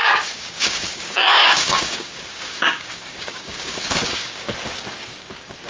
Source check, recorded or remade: remade